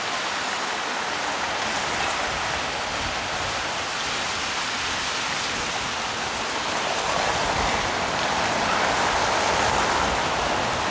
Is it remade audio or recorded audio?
recorded